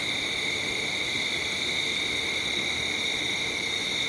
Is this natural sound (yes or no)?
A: no